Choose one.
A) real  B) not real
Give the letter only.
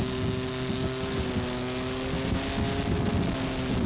A